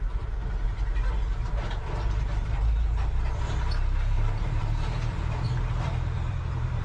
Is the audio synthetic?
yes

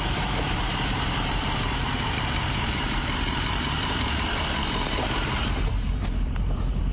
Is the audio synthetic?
yes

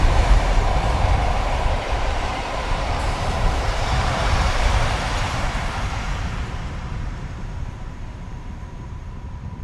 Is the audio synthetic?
yes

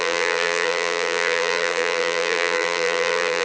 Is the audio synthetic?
yes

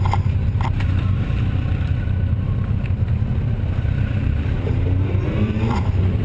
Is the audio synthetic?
yes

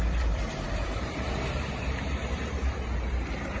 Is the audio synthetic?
yes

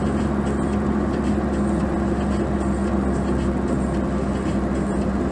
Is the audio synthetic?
no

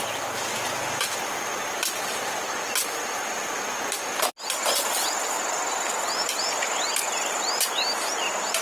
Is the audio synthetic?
no